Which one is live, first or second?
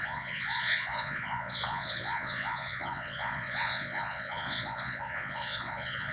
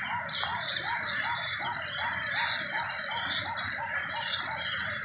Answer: second